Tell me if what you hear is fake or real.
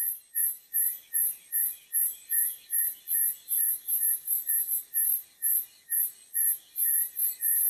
real